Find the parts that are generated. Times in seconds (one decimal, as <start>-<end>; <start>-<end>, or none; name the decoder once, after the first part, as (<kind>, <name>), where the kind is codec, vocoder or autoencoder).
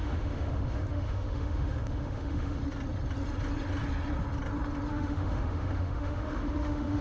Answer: 0.0-2.6 (autoencoder, DAC-VAE); 4.9-7.0